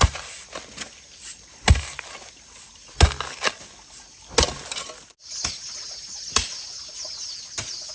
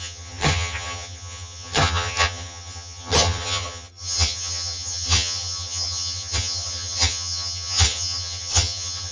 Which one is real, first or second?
first